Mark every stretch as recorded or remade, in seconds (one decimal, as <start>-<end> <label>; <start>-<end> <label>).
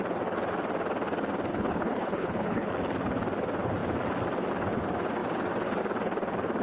0.0-1.5 recorded; 1.5-2.7 remade; 2.7-6.6 recorded